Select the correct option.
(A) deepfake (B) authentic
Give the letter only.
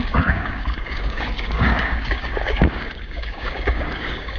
A